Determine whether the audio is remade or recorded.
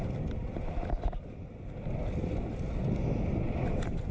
recorded